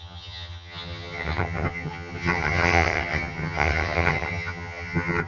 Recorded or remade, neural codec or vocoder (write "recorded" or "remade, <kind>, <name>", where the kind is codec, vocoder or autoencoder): remade, vocoder, HiFi-GAN